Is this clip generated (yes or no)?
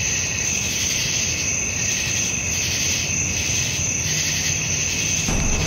no